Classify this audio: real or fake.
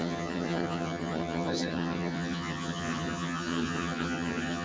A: fake